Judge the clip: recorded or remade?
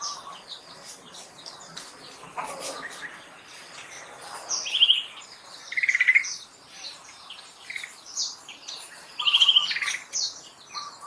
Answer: recorded